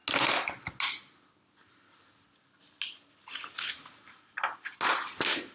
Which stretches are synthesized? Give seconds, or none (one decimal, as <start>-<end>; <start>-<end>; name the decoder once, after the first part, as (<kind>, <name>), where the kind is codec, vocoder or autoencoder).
none